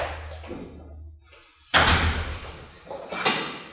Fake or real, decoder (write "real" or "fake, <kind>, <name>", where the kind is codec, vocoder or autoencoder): real